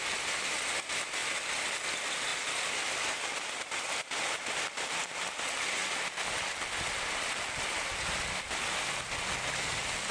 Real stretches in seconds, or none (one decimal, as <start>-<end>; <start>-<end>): 0.0-10.1